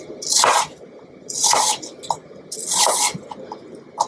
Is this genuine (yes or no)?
yes